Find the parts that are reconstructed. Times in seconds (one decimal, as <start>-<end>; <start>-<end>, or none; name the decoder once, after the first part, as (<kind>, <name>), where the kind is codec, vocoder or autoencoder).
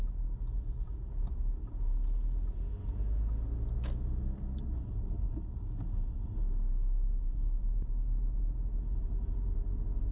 none